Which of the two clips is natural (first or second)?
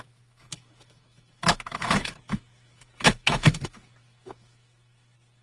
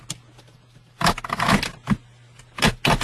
second